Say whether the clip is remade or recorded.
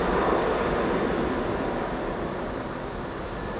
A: recorded